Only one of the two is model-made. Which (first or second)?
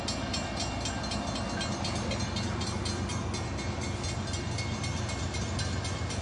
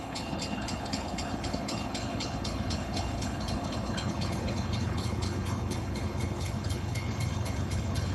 second